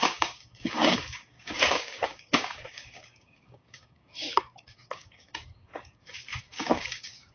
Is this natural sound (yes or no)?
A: no